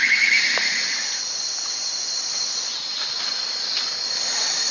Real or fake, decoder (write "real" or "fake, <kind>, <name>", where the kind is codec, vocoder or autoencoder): real